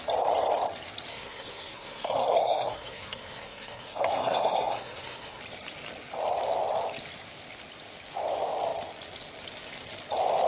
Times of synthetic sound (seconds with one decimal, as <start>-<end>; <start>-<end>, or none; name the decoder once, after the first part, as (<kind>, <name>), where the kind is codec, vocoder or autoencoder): 1.1-5.4 (codec, SNAC)